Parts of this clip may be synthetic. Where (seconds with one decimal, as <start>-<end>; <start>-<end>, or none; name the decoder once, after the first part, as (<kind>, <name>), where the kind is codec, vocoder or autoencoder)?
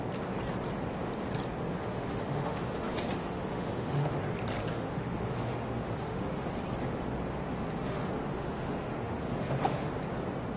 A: 1.9-4.2 (autoencoder, DAC-VAE); 4.7-6.5; 7.3-9.9